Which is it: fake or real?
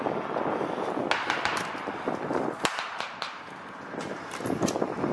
real